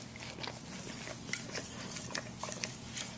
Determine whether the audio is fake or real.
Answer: real